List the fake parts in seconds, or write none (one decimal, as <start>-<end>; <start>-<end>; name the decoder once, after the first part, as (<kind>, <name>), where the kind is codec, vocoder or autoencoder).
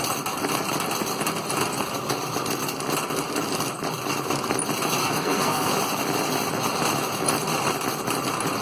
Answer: 5.0-5.7 (codec, SNAC)